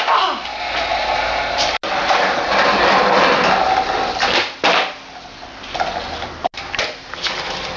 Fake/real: real